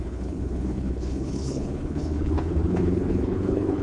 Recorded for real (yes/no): no